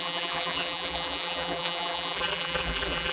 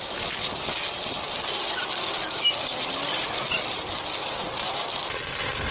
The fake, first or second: first